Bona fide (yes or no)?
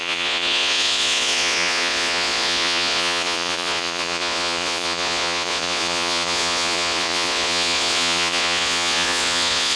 no